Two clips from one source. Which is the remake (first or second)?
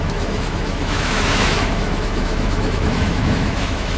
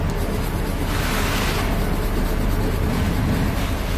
first